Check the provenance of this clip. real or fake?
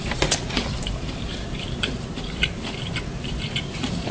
fake